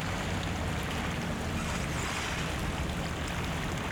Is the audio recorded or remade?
recorded